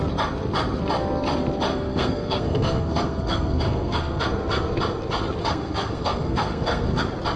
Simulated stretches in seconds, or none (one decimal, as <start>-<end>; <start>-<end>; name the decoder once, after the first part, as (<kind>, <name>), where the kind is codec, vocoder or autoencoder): 1.7-4.2 (codec, SNAC); 5.4-7.0

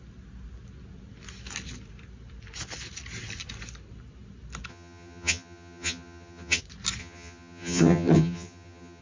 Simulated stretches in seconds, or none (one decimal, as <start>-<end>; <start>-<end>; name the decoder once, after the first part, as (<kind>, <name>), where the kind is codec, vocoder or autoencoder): 4.7-6.6 (vocoder, HiFi-GAN); 7.0-9.0

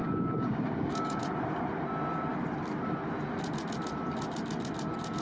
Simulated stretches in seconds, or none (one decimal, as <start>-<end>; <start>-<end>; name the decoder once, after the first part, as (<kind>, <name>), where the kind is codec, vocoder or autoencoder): 0.0-1.2 (codec, DAC)

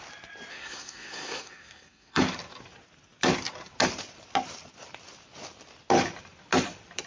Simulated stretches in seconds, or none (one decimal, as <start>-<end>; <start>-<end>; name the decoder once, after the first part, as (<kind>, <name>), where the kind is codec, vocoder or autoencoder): 0.5-2.2 (codec, SNAC)

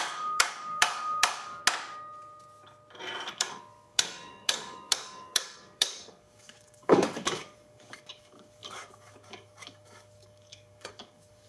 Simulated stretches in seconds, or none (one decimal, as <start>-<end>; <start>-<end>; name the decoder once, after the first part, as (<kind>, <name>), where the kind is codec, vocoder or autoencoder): 0.0-1.6 (codec, DAC); 3.3-11.5

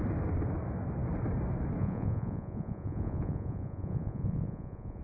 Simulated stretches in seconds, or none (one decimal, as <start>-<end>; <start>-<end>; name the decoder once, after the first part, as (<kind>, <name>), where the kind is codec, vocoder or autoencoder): 1.8-5.0 (vocoder, Vocos)

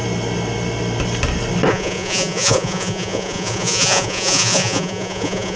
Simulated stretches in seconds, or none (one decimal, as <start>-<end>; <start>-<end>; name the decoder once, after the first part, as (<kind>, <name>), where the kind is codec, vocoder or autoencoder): 1.7-5.6 (vocoder, Vocos)

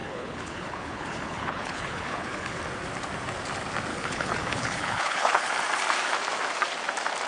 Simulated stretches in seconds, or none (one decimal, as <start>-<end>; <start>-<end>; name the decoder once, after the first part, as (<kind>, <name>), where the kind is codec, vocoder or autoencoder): 0.0-2.6 (codec, HILCodec); 3.9-5.5